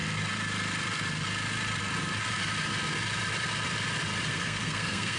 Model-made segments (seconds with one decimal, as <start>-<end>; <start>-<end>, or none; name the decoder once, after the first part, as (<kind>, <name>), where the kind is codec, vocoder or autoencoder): 4.3-5.2 (codec, SNAC)